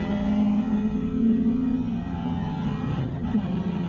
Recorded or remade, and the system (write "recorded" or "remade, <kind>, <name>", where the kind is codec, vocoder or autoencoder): remade, vocoder, HiFi-GAN